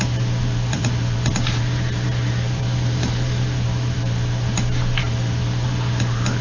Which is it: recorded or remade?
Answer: remade